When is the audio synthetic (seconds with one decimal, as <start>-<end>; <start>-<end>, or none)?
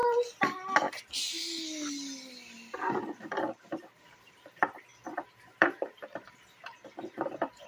2.8-4.9; 5.6-6.7